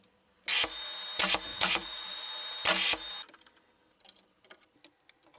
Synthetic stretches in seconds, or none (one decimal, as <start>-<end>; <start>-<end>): 1.5-2.3